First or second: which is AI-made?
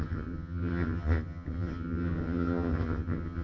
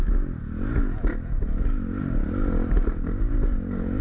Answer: first